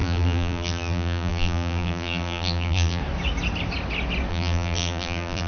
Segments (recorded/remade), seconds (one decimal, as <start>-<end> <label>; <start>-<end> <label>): 0.0-3.0 remade; 3.0-4.3 recorded; 4.3-5.5 remade